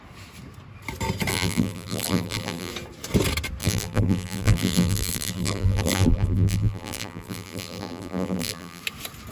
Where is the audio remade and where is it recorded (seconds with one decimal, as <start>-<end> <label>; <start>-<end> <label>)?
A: 0.0-1.3 recorded; 1.3-2.7 remade; 2.7-3.6 recorded; 3.6-8.8 remade; 8.8-9.3 recorded